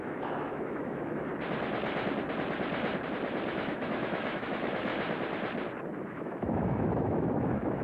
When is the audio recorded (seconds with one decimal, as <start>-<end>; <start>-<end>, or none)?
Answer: 1.3-3.5; 4.9-6.1